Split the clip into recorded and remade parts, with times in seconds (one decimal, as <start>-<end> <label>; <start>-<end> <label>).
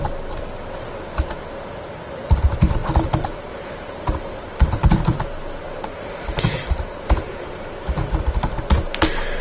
0.0-2.8 recorded; 2.8-7.7 remade; 7.7-9.4 recorded